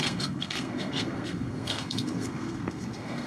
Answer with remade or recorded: remade